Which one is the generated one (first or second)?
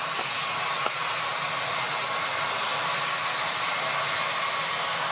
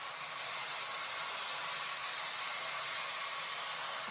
second